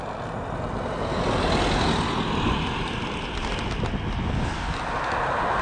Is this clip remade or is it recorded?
recorded